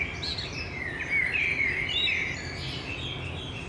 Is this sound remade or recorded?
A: recorded